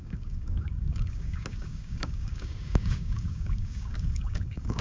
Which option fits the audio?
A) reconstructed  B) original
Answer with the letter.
A